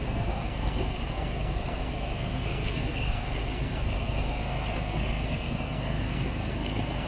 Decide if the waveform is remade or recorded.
remade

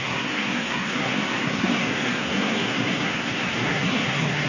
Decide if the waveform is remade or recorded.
remade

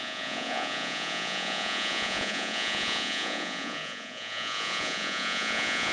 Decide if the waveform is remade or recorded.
remade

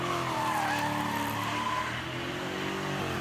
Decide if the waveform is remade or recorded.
recorded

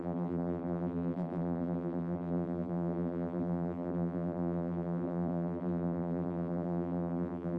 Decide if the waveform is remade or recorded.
remade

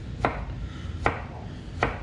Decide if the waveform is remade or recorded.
recorded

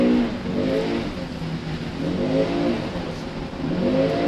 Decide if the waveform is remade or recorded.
recorded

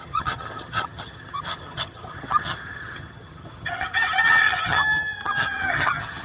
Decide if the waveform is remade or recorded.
remade